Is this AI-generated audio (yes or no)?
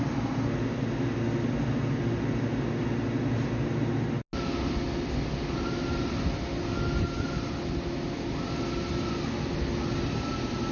no